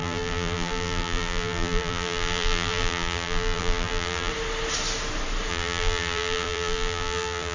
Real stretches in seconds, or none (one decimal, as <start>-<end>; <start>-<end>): 4.3-5.5